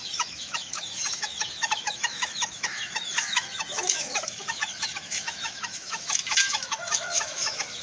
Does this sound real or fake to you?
fake